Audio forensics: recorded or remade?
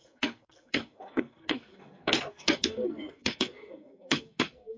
remade